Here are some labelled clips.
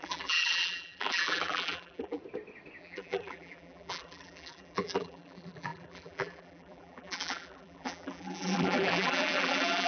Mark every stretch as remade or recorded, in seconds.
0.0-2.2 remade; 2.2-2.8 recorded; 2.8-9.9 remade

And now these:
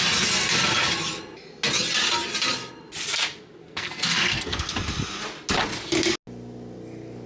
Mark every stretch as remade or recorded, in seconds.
0.0-3.6 recorded; 3.6-4.7 remade; 4.7-7.3 recorded

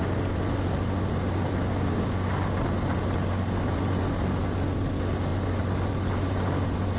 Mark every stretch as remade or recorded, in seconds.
0.0-1.6 recorded; 1.6-2.3 remade; 2.3-7.0 recorded

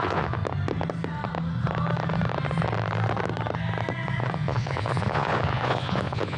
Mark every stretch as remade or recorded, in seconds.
0.0-0.4 remade; 0.4-4.2 recorded; 4.2-6.4 remade

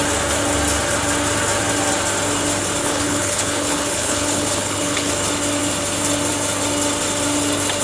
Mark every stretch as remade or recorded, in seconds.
0.0-2.8 recorded; 2.8-5.1 remade; 5.1-7.8 recorded

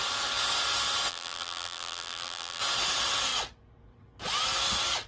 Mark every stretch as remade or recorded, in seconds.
0.0-1.1 recorded; 1.1-2.6 remade; 2.6-5.1 recorded

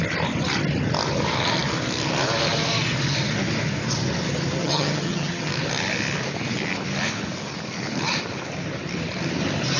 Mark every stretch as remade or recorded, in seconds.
0.0-4.6 recorded; 4.6-5.5 remade; 5.5-9.8 recorded

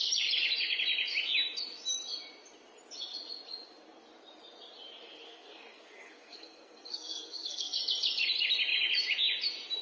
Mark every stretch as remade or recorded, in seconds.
0.0-5.1 recorded; 5.1-7.8 remade; 7.8-9.8 recorded